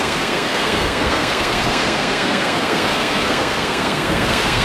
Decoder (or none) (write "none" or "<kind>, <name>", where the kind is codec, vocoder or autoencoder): codec, SNAC